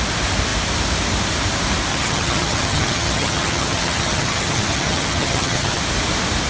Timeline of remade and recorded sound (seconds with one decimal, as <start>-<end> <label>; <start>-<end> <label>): 0.0-1.9 recorded; 1.9-5.8 remade; 5.8-6.5 recorded